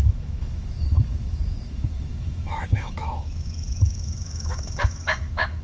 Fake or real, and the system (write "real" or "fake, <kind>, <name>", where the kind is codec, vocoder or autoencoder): fake, autoencoder, DAC-VAE